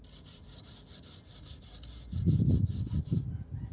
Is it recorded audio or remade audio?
recorded